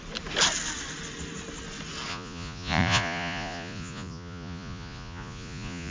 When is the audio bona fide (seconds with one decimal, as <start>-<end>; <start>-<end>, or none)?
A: 0.0-2.1